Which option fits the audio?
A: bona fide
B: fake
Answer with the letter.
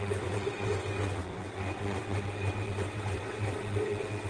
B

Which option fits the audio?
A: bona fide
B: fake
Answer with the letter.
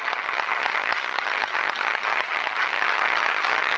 B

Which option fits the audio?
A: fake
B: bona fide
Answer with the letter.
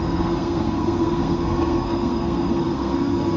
A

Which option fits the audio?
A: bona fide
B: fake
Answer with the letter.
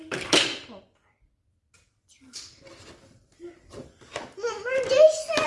A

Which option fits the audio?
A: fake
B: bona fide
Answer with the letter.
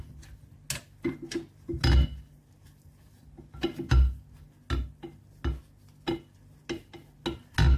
B